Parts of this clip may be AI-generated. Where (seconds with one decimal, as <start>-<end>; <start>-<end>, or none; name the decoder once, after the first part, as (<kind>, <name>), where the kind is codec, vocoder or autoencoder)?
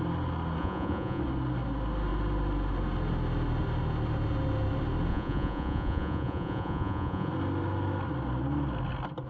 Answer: 0.6-1.2 (vocoder, Vocos); 5.1-7.3